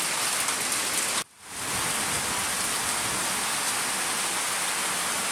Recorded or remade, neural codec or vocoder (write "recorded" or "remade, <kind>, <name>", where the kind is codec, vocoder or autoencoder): recorded